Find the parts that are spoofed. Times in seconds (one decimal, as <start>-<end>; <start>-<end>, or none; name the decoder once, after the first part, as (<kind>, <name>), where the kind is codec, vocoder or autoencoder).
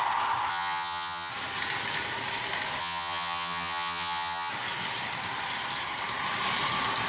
0.5-1.3 (vocoder, HiFi-GAN); 2.8-4.5